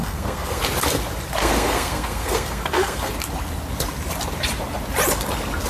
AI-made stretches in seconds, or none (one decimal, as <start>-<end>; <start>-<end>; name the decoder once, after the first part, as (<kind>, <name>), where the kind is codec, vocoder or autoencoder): 0.0-0.6 (codec, SNAC); 1.4-3.1